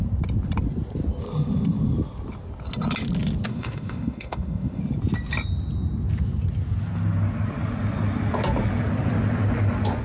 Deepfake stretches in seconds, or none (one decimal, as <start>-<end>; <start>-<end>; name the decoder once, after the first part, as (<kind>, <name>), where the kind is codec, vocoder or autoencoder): 3.5-4.8 (autoencoder, DAC-VAE)